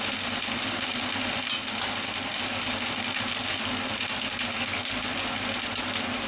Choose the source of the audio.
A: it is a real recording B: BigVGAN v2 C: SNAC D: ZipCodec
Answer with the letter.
A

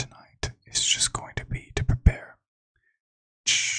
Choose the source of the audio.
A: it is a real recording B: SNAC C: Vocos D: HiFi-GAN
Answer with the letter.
A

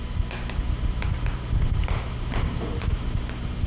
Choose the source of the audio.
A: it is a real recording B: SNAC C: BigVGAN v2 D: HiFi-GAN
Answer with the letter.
A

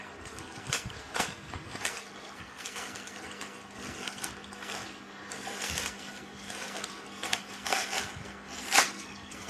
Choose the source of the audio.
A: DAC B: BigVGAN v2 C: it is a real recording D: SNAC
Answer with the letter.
D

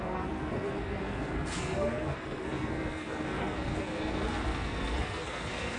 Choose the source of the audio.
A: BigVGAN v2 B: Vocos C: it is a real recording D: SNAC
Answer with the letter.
D